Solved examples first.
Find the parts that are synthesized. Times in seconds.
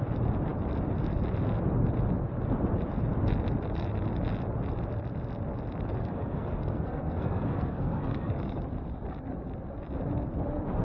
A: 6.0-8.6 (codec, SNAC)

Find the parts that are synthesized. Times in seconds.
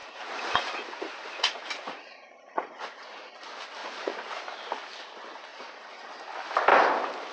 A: 0.0-3.3 (vocoder, Vocos); 3.8-4.4; 5.5-6.1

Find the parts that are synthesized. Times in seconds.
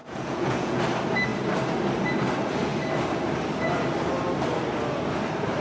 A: 0.0-0.8 (vocoder, Vocos)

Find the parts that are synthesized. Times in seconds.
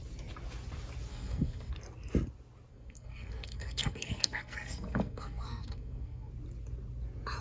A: 1.1-1.7 (codec, SNAC); 2.7-6.3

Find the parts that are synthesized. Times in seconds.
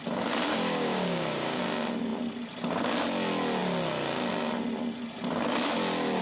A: 0.5-1.6 (codec, DAC)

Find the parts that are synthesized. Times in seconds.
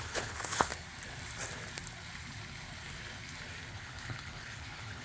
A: 0.0-0.7 (codec, HILCodec); 3.7-5.0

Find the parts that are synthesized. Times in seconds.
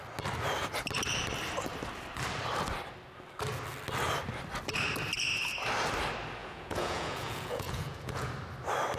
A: 6.4-8.3 (vocoder, Vocos)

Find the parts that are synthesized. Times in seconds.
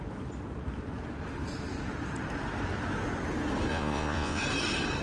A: 3.7-4.4 (vocoder, Vocos)